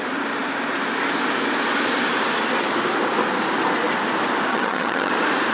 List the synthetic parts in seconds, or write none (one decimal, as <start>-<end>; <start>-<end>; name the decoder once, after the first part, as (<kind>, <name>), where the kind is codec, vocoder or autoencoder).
4.5-5.1 (vocoder, HiFi-GAN)